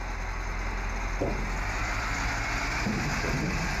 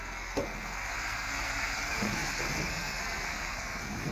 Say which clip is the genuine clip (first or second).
first